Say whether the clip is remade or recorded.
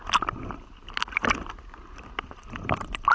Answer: recorded